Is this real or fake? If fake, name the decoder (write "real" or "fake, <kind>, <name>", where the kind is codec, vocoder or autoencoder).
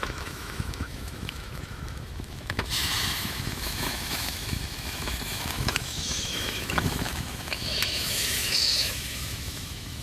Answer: fake, autoencoder, DAC-VAE